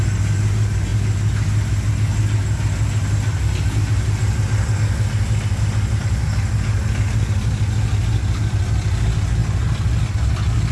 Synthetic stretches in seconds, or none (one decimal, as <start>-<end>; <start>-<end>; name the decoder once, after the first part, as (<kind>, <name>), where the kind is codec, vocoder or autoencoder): none